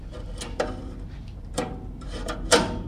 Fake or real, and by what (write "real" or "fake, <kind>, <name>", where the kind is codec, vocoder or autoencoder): fake, vocoder, BigVGAN v2